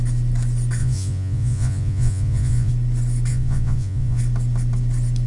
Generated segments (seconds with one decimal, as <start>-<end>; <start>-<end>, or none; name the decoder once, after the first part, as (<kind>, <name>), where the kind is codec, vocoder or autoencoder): 0.8-2.7 (vocoder, Vocos); 3.3-4.2